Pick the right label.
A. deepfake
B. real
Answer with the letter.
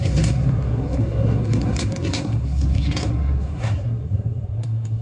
A